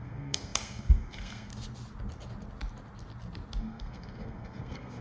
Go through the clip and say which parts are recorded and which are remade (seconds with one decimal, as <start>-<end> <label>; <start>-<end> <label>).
0.0-1.5 remade; 1.5-3.6 recorded; 3.6-5.0 remade